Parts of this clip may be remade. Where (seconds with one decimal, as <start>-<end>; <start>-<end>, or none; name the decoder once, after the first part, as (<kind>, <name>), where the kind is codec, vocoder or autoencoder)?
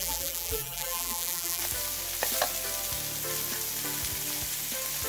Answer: 0.0-1.6 (vocoder, BigVGAN v2)